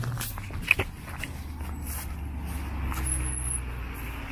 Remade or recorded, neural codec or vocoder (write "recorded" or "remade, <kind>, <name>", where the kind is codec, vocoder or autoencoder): recorded